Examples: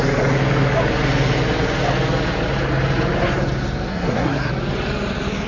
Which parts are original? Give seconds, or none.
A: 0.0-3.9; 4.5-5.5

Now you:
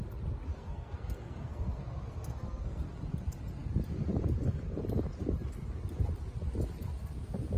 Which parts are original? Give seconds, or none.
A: 0.0-0.5; 2.8-7.6

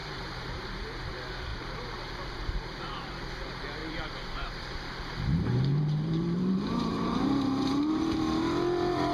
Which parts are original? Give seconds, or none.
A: 1.0-1.5; 3.3-3.8; 8.0-9.1

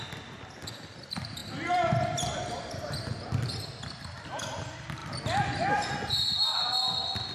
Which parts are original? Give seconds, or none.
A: 0.0-7.3

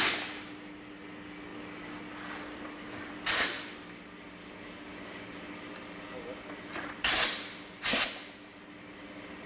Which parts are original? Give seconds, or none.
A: 0.0-9.5

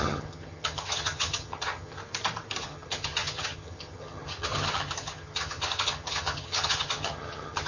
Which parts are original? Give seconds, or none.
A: 2.0-2.6